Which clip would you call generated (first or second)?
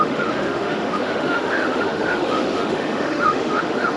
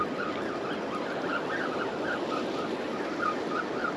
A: first